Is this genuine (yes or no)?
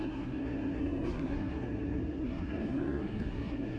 no